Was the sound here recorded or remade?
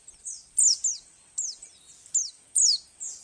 recorded